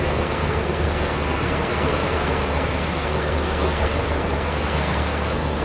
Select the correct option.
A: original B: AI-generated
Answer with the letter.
B